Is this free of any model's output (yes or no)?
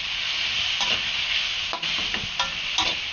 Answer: yes